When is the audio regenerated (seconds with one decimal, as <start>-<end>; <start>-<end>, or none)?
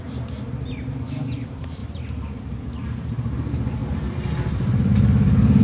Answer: 0.0-1.8; 2.4-3.8; 4.5-5.6